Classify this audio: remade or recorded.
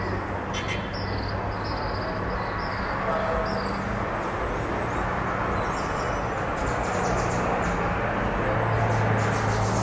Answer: recorded